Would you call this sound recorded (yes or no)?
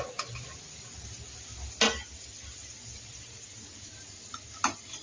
yes